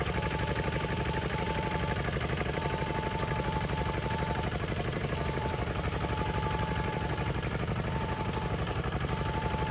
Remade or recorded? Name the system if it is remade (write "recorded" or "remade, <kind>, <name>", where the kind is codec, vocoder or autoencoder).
remade, vocoder, BigVGAN v2